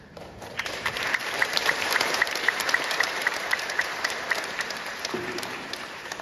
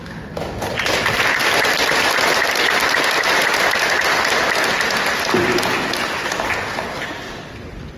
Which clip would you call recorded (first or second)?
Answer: second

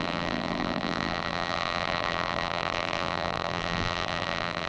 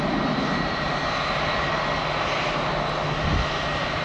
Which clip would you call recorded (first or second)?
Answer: second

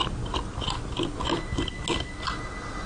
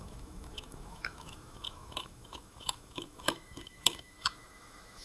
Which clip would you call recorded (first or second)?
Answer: first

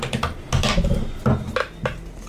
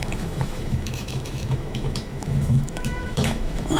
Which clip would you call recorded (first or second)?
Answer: first